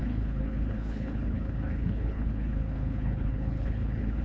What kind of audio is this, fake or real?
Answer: fake